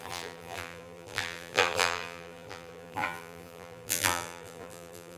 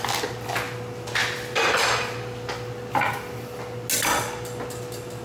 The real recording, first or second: second